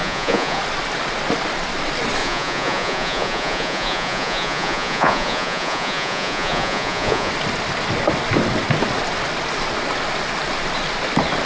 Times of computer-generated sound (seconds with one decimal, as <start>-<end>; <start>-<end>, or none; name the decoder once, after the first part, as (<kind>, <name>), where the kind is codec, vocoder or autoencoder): 0.0-0.6 (vocoder, Vocos); 2.2-7.3